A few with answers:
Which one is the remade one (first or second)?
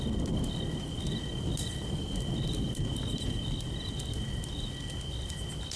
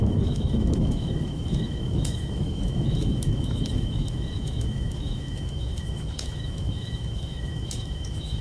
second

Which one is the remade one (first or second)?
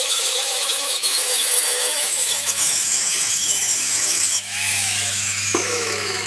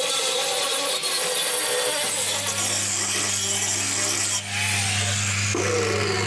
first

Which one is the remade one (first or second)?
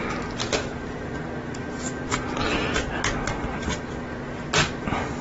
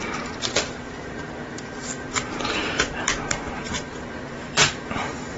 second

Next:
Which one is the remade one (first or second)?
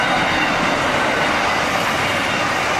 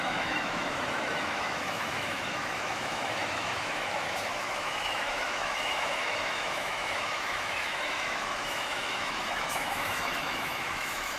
second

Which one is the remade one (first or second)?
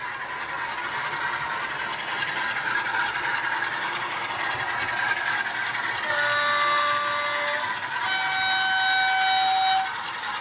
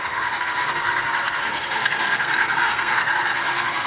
second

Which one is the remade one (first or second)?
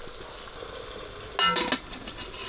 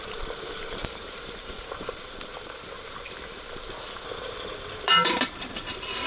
second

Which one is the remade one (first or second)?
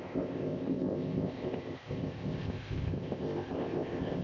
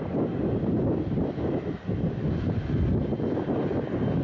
first